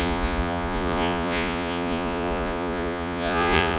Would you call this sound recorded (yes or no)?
no